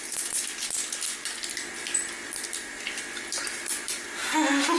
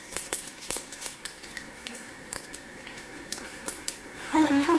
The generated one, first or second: second